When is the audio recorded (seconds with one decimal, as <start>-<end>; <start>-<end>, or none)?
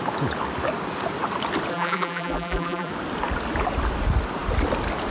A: 0.0-1.7; 2.9-5.1